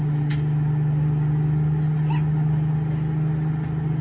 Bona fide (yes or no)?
yes